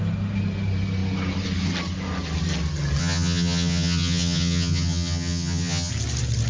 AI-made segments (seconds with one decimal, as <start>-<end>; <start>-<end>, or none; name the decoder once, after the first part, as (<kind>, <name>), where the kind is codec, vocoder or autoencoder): 3.0-5.9 (vocoder, HiFi-GAN)